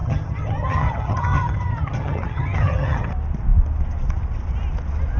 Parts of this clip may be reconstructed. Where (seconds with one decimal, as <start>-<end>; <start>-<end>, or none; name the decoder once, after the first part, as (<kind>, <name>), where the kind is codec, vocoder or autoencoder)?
0.0-3.1 (vocoder, HiFi-GAN)